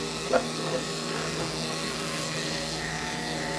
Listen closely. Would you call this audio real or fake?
fake